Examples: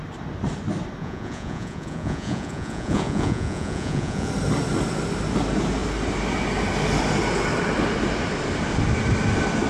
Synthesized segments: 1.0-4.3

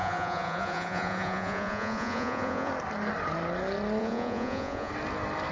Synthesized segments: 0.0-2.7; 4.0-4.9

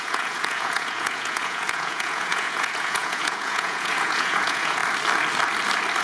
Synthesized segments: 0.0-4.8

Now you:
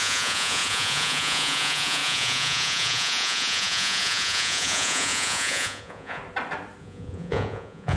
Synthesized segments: 0.0-6.2; 6.8-8.0

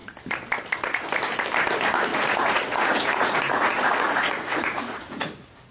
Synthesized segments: 2.1-5.7

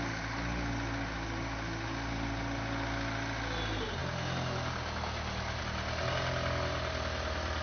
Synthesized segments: none